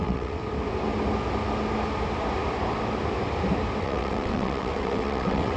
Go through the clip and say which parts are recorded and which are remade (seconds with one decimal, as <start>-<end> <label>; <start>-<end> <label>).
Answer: 0.0-0.4 remade; 0.4-3.8 recorded; 3.8-5.6 remade